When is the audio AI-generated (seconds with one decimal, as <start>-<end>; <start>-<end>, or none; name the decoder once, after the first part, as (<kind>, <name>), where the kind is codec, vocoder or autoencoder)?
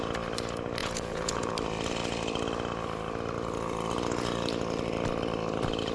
0.8-1.5 (vocoder, Vocos)